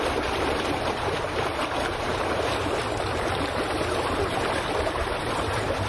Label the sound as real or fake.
fake